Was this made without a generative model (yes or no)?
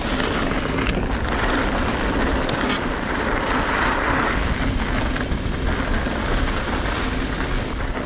yes